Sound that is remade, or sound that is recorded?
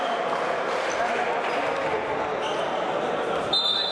recorded